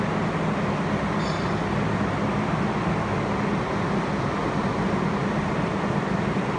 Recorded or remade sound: recorded